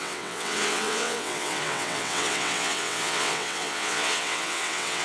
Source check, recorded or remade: remade